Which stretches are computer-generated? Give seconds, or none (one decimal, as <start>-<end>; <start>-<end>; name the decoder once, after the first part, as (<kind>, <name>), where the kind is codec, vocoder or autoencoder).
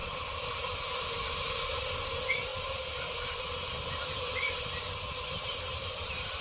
4.8-6.4 (vocoder, BigVGAN v2)